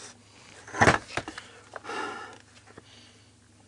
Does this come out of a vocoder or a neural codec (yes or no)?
no